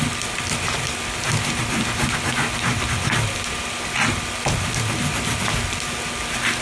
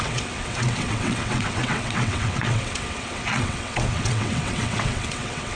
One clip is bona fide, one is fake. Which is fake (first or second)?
second